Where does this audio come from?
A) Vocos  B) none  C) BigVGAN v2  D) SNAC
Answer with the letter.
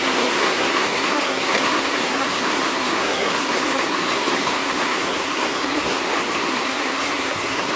D